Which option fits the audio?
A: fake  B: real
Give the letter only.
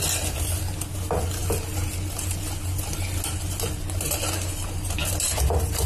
B